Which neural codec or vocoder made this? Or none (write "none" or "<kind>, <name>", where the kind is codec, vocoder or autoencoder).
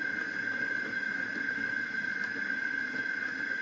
none